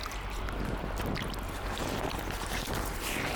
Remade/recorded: recorded